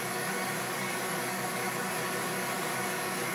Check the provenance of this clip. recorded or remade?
remade